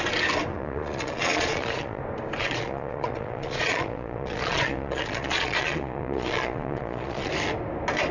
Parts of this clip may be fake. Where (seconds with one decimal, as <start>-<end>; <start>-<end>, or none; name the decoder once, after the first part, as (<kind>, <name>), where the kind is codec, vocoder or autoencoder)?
0.5-2.0 (vocoder, Vocos); 2.4-7.3